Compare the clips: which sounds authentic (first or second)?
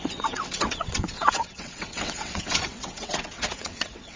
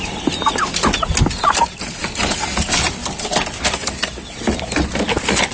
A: second